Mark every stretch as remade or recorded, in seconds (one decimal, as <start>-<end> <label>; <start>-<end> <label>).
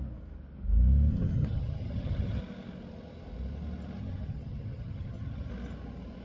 0.0-1.1 recorded; 1.1-2.4 remade; 2.4-4.0 recorded; 4.0-5.5 remade; 5.5-6.2 recorded